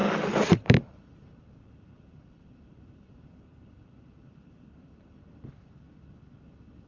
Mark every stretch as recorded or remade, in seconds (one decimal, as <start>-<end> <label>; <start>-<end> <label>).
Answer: 0.0-3.8 remade; 3.8-6.9 recorded